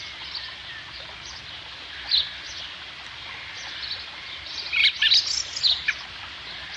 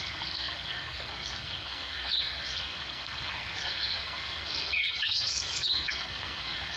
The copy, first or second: second